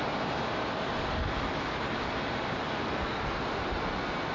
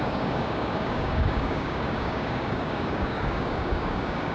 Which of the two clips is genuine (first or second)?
first